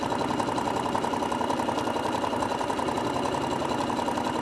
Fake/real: real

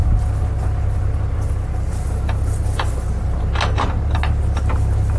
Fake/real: real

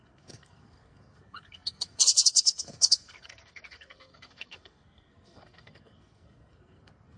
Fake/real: fake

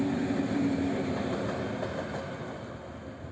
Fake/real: real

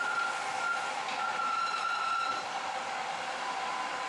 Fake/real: real